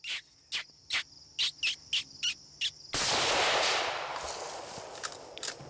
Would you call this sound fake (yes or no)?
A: no